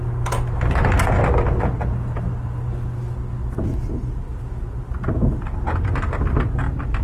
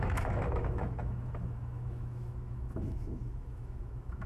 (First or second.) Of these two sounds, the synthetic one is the second